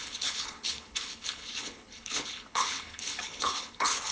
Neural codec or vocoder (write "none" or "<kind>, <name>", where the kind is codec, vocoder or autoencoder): codec, HILCodec